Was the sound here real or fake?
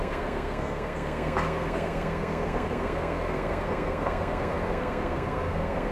fake